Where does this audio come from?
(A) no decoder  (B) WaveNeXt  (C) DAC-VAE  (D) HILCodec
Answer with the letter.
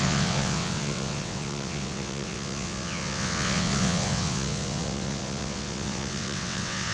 B